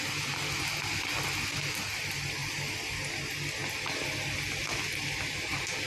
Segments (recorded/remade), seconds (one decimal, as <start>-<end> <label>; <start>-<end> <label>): 0.0-5.9 recorded